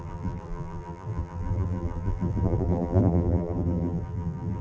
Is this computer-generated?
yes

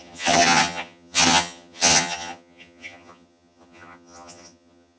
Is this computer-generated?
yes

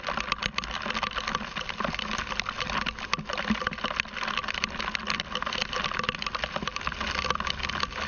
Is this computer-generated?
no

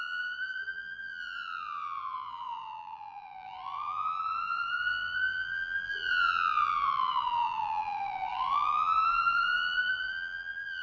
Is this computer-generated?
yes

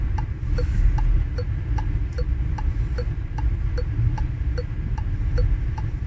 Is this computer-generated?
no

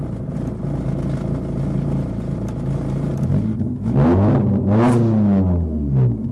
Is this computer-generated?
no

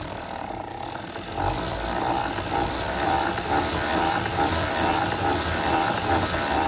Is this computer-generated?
yes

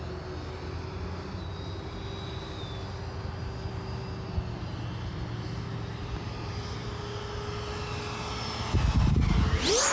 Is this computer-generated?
no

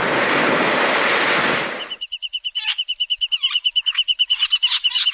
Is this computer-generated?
yes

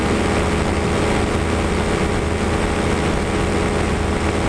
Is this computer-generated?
no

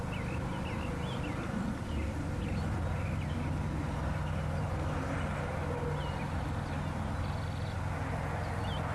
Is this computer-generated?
no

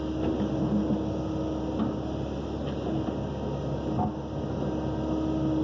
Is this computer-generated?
no